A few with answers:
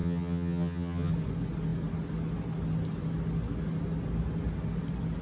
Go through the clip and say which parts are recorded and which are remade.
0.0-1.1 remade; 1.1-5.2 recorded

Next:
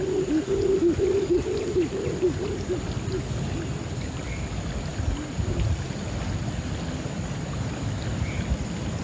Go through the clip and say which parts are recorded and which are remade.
0.0-9.0 recorded

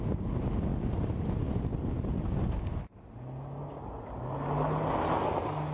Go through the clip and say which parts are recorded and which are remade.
0.0-5.7 recorded

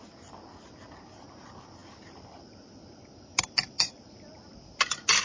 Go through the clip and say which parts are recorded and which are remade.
0.0-5.2 recorded

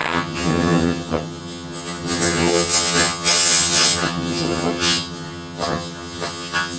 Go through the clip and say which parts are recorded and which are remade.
0.0-6.8 remade